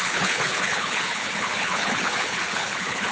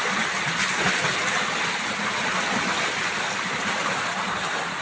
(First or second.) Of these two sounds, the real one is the second